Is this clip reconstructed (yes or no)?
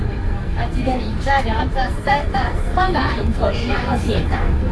yes